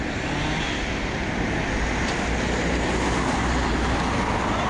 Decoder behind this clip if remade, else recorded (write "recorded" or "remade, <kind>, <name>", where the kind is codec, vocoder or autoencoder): recorded